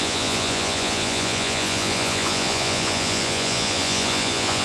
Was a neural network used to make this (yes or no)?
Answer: yes